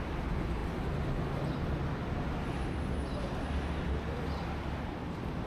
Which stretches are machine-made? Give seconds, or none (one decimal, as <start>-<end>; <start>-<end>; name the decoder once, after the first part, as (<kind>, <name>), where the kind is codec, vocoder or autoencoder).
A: none